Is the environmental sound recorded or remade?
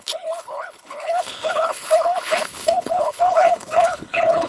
remade